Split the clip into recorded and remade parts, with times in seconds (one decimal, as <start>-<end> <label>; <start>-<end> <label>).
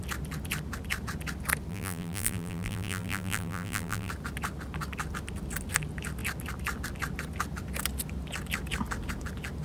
0.0-1.7 recorded; 1.7-4.1 remade; 4.1-9.6 recorded